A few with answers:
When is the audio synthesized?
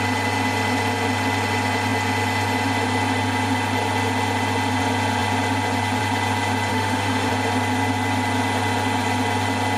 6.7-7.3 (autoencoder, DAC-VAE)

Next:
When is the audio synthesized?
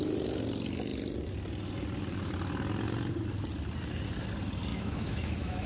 4.7-5.7 (autoencoder, DAC-VAE)